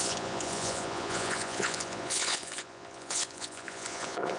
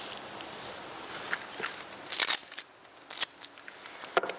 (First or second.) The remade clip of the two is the first